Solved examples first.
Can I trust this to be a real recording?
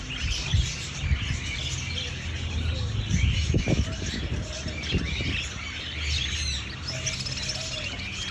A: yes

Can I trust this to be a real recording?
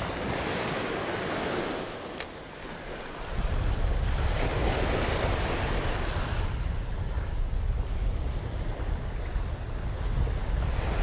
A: yes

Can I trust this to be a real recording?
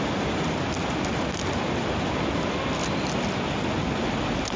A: yes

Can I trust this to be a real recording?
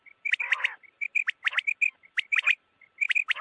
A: yes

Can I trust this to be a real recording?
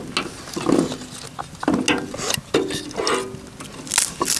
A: yes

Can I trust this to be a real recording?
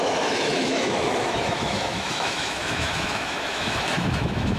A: no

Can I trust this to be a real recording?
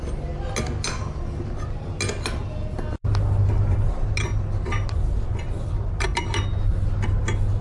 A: yes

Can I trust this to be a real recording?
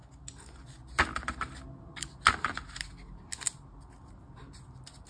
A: yes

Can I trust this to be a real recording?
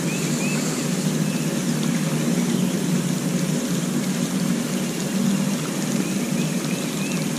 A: yes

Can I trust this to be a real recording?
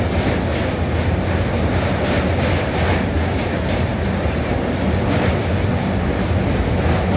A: yes